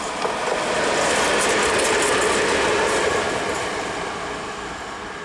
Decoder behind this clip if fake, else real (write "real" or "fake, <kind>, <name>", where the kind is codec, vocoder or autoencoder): real